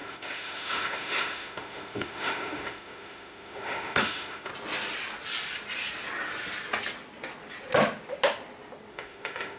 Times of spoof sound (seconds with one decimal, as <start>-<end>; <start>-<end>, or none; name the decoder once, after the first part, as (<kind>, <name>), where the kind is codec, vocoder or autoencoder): 0.0-4.5 (autoencoder, DAC-VAE); 8.9-9.6